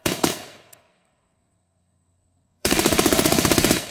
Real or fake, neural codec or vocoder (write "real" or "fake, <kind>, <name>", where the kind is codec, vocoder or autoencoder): fake, codec, SNAC